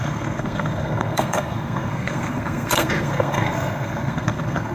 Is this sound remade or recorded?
remade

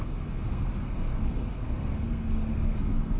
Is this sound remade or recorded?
remade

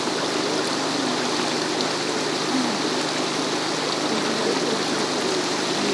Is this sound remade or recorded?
recorded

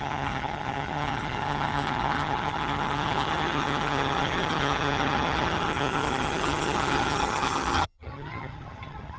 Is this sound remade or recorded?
remade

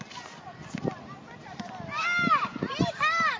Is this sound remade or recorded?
recorded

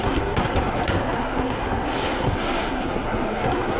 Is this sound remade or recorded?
remade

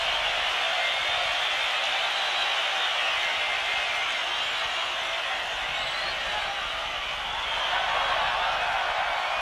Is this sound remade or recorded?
recorded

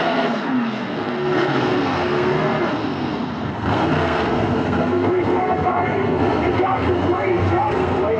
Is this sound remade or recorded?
remade